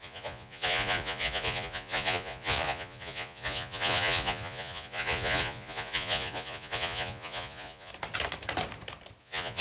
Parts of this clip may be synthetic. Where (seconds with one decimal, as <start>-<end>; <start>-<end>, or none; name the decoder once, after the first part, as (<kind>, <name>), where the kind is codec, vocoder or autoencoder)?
0.0-7.9 (vocoder, Vocos); 9.2-9.6